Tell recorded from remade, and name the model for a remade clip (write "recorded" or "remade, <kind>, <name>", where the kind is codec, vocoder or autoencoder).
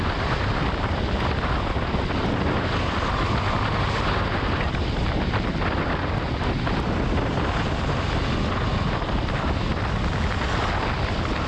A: recorded